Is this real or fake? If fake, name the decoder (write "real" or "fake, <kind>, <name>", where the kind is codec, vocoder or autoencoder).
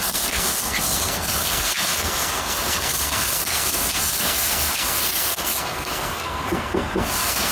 fake, codec, SNAC